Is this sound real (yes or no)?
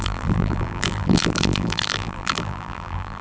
no